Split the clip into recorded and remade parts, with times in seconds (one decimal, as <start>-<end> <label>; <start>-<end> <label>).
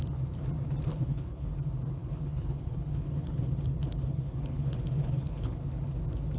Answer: 0.0-0.9 recorded; 0.9-1.5 remade; 1.5-2.0 recorded; 2.0-5.6 remade; 5.6-6.4 recorded